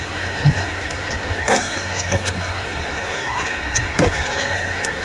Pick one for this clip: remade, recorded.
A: remade